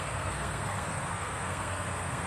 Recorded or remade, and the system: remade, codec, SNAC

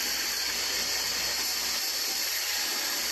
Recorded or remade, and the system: recorded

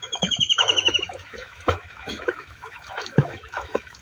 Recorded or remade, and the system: remade, autoencoder, DAC-VAE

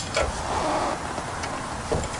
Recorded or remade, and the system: recorded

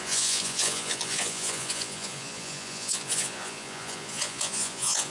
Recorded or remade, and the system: remade, vocoder, Vocos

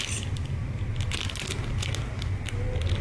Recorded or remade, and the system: recorded